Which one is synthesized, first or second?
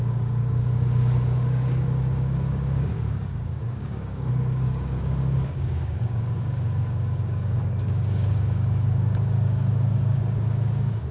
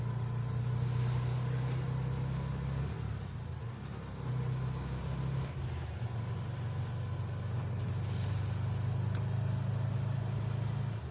first